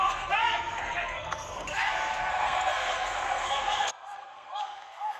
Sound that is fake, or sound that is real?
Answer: fake